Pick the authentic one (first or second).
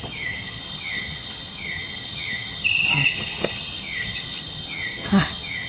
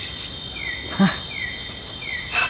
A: second